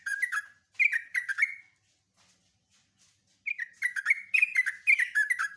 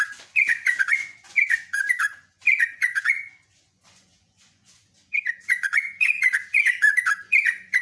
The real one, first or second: first